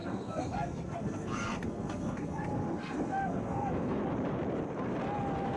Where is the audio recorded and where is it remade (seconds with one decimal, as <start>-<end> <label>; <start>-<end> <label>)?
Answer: 0.0-4.0 remade; 4.0-5.6 recorded